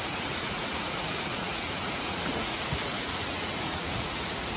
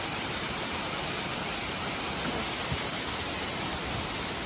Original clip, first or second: second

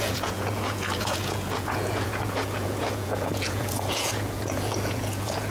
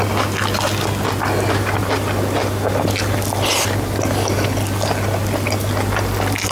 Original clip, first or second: second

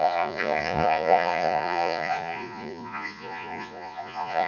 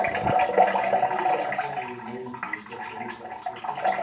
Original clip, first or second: second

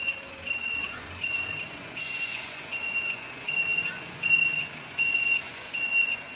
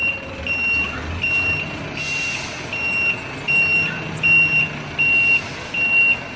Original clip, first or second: second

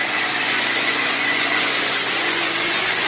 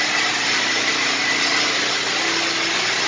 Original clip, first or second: second